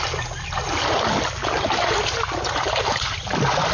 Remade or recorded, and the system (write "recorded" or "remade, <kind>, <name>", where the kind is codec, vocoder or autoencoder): recorded